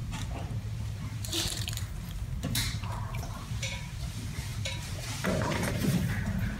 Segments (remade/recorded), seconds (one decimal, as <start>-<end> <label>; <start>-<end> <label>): 0.0-0.8 recorded; 0.8-6.6 remade